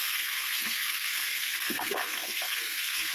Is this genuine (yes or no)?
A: no